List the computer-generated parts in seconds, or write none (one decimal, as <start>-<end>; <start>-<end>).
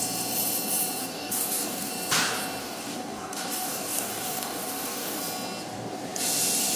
1.0-1.9; 2.6-5.2